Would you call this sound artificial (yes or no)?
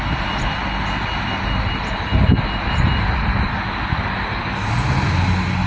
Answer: no